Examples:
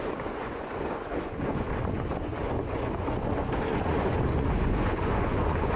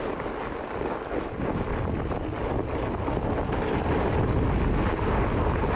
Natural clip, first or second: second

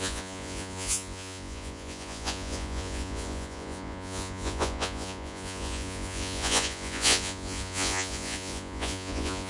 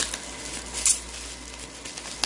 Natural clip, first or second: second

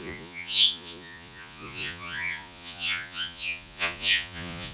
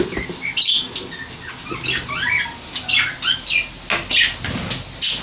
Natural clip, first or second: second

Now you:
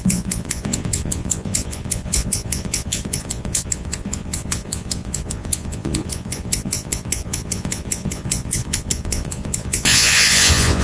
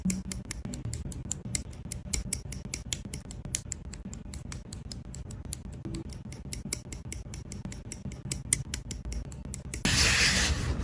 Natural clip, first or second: second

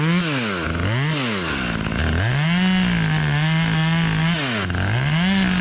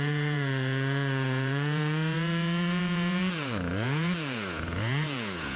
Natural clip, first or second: first